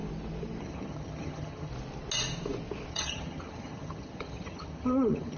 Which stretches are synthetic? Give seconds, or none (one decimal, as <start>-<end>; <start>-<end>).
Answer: 0.6-1.7; 2.9-5.4